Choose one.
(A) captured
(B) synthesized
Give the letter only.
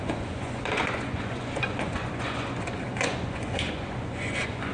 B